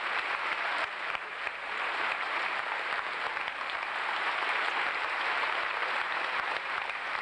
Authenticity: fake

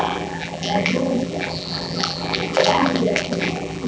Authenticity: fake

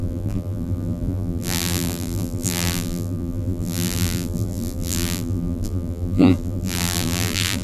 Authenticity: fake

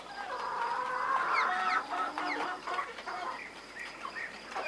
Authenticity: fake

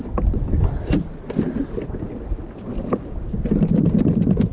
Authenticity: real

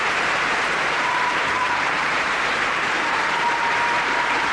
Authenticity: fake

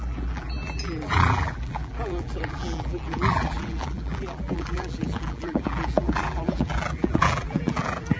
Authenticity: fake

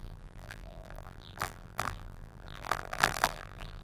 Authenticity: fake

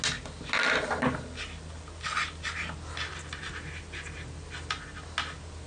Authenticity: real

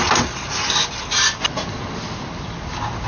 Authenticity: real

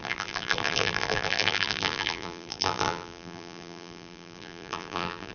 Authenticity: fake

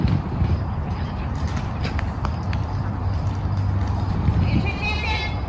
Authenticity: real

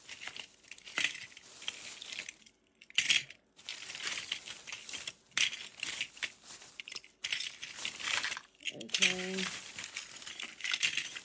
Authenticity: real